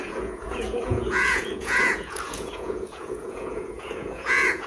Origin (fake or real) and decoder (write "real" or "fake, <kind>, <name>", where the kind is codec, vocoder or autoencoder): fake, vocoder, Vocos